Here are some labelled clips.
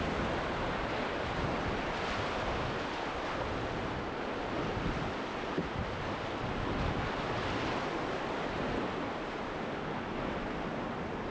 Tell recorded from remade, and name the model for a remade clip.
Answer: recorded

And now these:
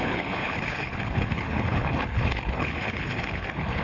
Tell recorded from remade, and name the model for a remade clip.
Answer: remade, codec, HILCodec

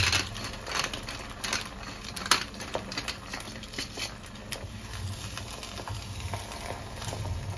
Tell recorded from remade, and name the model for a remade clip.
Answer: recorded